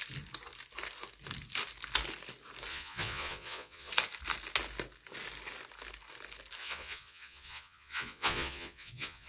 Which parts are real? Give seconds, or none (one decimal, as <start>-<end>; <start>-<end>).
0.0-2.7; 3.9-6.6